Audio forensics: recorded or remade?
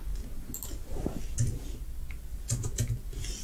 recorded